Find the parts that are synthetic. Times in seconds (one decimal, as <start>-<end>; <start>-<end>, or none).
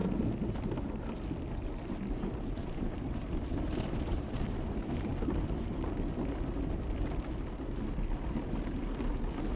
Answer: 2.4-5.1